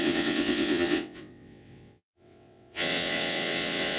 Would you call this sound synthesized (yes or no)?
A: yes